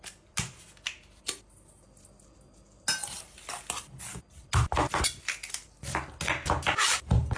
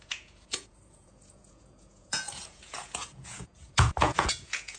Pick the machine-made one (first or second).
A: second